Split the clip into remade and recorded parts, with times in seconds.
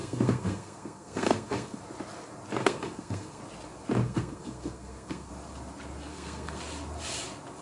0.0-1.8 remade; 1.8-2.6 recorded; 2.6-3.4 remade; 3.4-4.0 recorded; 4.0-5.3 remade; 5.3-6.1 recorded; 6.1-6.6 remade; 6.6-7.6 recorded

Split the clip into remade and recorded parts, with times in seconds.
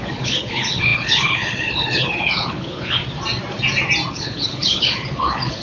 0.0-3.0 remade; 3.0-4.1 recorded; 4.1-5.6 remade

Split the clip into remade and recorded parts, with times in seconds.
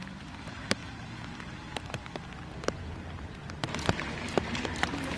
0.0-0.8 remade; 0.8-3.9 recorded; 3.9-5.2 remade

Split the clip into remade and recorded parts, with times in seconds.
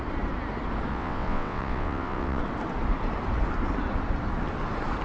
0.0-0.9 recorded; 0.9-2.4 remade; 2.4-5.0 recorded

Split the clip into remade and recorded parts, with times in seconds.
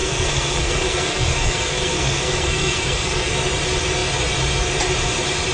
0.0-3.3 remade; 3.3-5.5 recorded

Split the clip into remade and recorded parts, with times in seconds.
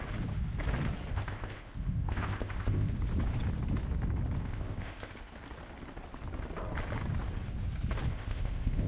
0.0-1.1 recorded; 1.1-2.9 remade; 2.9-4.4 recorded; 4.4-5.1 remade; 5.1-8.1 recorded; 8.1-8.9 remade